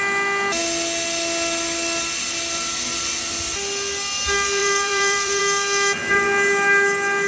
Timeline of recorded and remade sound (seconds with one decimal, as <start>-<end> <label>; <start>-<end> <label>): 0.0-4.6 recorded; 4.6-5.4 remade; 5.4-7.3 recorded